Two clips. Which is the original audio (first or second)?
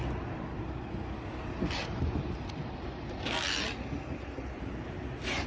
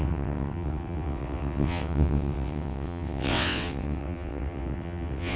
first